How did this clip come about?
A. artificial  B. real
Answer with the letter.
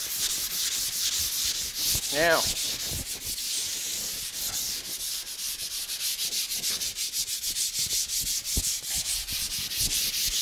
B